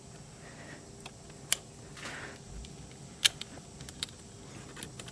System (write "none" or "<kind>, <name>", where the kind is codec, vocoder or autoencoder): none